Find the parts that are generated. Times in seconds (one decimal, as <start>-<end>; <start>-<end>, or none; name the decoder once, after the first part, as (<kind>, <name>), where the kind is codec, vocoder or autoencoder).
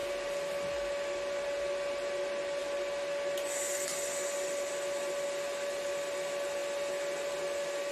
none